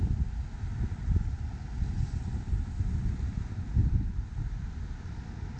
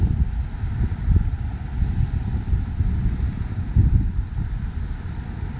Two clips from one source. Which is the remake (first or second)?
second